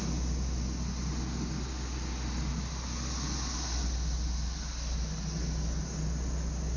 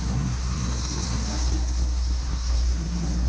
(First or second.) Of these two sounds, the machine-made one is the second